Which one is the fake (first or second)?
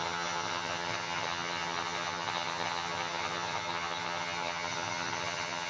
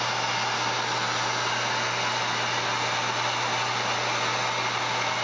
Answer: first